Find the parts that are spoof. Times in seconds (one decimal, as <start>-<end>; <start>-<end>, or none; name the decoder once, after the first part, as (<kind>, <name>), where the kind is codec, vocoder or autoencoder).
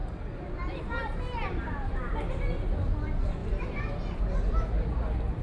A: 0.0-2.4 (vocoder, BigVGAN v2); 3.4-4.2